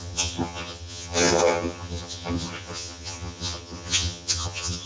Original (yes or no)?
no